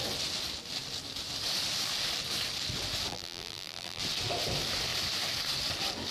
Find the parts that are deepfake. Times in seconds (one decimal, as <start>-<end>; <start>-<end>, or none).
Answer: 3.1-4.0